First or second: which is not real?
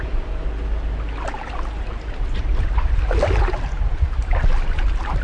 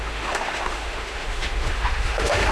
second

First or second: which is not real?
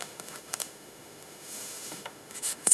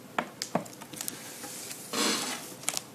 first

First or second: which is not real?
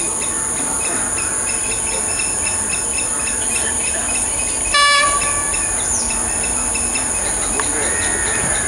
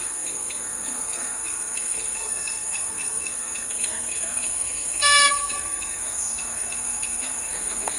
second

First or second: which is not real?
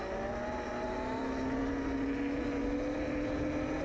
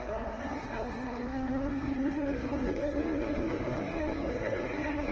second